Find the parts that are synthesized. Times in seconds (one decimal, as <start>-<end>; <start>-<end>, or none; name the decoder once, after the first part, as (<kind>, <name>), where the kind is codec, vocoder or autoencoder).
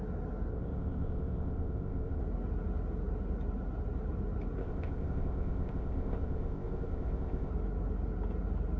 0.5-2.2 (codec, ZipCodec); 4.6-7.5